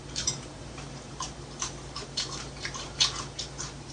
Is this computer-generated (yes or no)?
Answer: yes